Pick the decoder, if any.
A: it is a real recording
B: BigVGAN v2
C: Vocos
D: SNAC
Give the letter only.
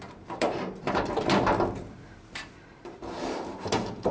B